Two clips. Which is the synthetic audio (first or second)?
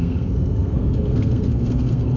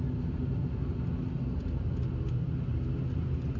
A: first